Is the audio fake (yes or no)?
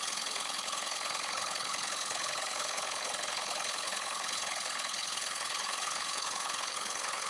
yes